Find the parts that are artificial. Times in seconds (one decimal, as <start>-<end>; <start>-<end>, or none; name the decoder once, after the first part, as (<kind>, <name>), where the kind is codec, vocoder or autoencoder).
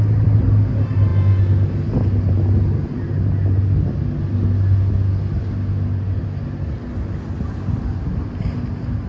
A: none